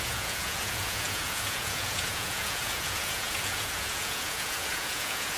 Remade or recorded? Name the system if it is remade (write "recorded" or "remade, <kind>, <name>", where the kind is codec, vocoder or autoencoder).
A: remade, vocoder, Vocos